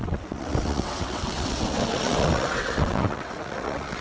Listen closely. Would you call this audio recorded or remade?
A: remade